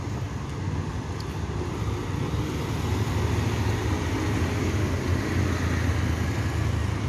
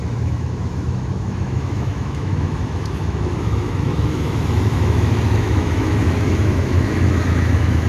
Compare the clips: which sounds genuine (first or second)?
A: first